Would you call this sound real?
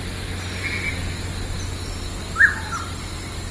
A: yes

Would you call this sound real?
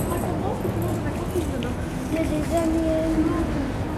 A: yes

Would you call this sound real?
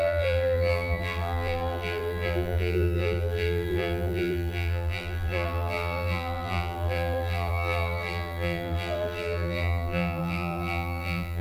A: no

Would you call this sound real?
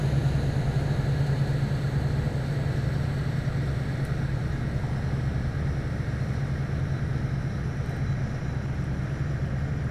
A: yes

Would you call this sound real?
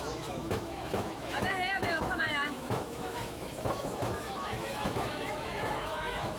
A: no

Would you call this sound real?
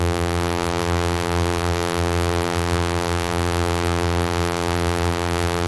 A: no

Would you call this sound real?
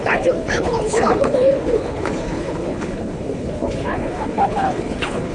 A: no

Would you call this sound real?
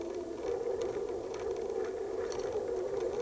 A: yes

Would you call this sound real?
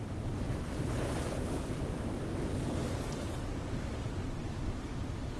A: yes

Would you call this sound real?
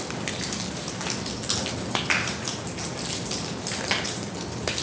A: yes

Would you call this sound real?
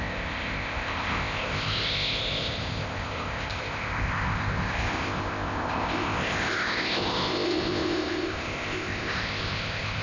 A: no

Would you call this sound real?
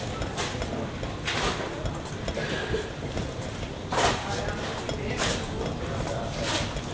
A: yes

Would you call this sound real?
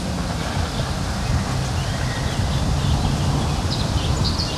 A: yes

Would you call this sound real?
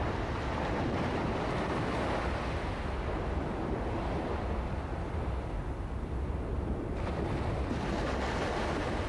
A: yes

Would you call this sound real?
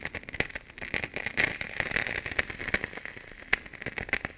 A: yes